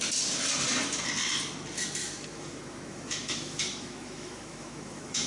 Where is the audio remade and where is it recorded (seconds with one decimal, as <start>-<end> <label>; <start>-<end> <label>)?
0.0-2.0 recorded; 2.0-5.3 remade